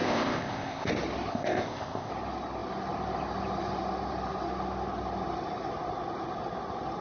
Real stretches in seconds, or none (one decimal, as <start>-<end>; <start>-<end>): 0.9-1.3; 2.1-7.0